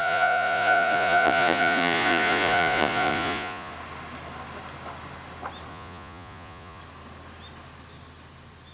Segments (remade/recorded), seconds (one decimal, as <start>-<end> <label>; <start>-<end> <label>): 0.0-3.7 remade; 3.7-5.7 recorded; 5.7-6.8 remade; 6.8-8.7 recorded